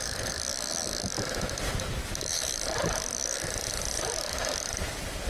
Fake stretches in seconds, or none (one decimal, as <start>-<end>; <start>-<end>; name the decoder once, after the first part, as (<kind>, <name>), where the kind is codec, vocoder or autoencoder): 0.5-3.7 (vocoder, BigVGAN v2)